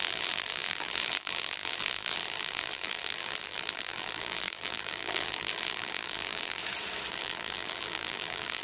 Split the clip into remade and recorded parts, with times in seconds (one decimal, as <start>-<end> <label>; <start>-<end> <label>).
0.0-6.6 remade; 6.6-7.1 recorded; 7.1-8.6 remade